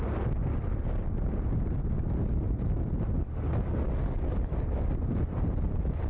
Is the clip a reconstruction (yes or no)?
no